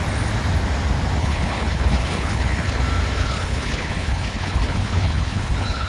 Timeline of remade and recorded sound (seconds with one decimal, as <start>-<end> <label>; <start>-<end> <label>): 0.0-1.2 recorded; 1.2-2.8 remade; 2.8-3.2 recorded; 3.2-5.9 remade